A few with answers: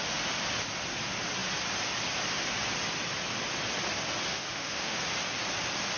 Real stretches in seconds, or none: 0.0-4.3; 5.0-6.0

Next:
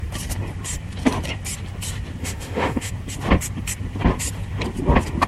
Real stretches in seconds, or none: 0.0-2.2; 2.9-5.3